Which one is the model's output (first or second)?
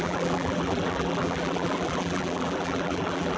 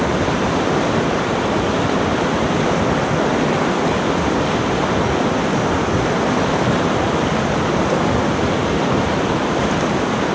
first